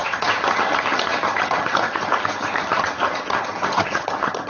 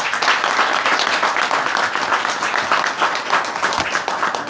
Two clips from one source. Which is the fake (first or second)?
first